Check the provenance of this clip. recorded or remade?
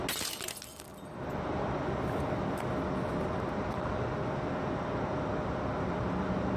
recorded